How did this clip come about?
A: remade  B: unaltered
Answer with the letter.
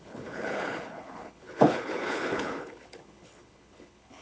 A